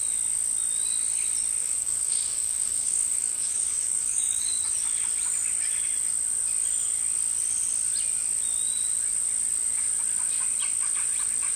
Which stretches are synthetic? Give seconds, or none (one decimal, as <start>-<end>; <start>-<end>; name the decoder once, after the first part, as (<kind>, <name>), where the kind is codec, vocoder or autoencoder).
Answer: 1.6-4.4 (codec, DAC)